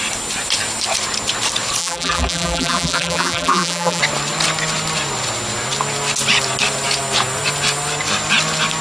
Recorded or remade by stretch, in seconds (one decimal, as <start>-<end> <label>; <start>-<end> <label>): 0.0-1.8 recorded; 1.8-4.0 remade; 4.0-8.8 recorded